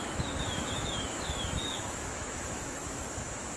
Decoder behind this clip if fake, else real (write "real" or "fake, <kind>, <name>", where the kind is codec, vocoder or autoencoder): fake, autoencoder, DAC-VAE